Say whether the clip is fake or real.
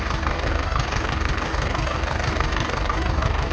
fake